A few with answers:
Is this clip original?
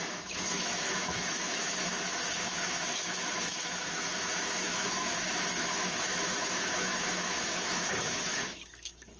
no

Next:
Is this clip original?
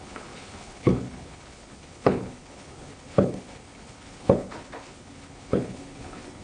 no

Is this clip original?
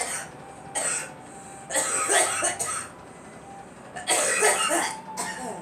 yes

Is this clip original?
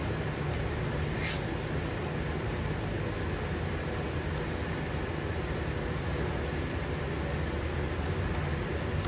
yes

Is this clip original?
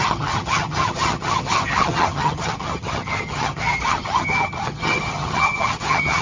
no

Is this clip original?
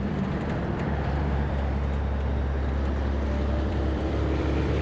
no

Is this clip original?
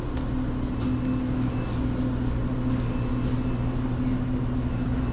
yes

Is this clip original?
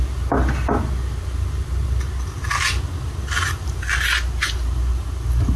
yes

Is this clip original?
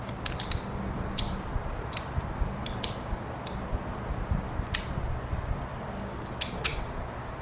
yes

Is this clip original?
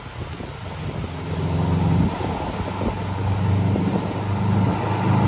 yes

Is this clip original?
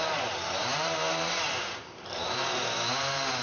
no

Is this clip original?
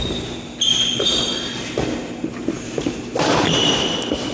yes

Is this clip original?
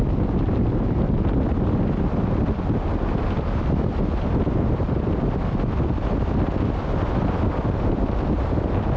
yes